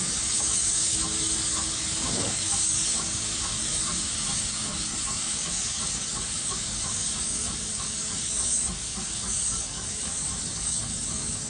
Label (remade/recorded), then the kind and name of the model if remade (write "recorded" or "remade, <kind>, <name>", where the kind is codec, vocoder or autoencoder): remade, codec, DAC